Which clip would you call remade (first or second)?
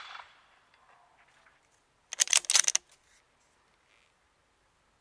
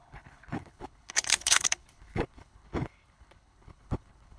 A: second